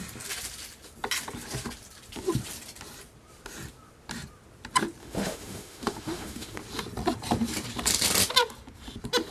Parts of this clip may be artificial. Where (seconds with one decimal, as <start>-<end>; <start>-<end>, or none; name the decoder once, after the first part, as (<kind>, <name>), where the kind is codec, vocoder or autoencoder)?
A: 5.0-6.6 (autoencoder, DAC-VAE)